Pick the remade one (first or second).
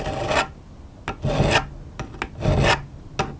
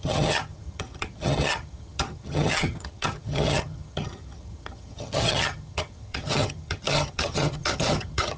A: second